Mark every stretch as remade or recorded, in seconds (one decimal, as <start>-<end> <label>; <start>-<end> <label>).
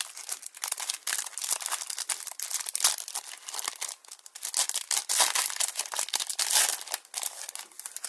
0.0-8.1 recorded